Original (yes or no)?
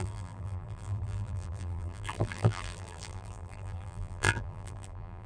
no